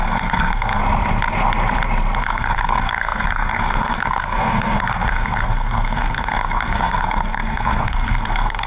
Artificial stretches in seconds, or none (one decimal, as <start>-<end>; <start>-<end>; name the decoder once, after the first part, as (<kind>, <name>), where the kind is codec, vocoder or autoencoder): 0.0-0.8 (codec, SNAC); 2.2-8.7